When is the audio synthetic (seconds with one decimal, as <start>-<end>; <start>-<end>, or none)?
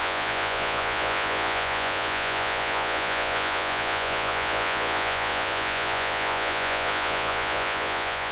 0.0-8.3